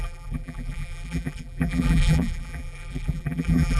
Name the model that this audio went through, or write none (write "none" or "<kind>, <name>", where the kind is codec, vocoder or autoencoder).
vocoder, BigVGAN v2